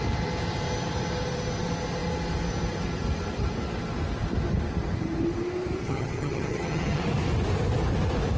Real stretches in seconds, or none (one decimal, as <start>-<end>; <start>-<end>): 0.0-5.8; 7.0-8.4